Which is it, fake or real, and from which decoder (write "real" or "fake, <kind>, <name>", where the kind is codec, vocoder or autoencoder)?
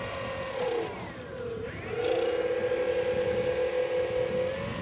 real